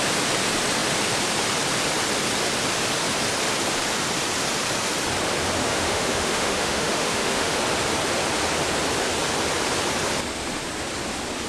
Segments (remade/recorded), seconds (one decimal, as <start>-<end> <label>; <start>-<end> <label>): 0.0-5.6 recorded; 5.6-7.6 remade; 7.6-11.5 recorded